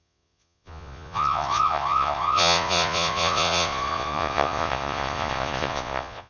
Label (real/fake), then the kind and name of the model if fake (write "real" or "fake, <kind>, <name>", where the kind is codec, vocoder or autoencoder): fake, vocoder, Vocos